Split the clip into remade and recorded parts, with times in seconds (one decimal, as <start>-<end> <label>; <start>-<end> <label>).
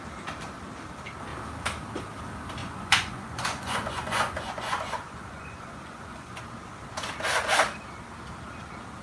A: 0.0-2.6 recorded; 2.6-6.4 remade; 6.4-9.0 recorded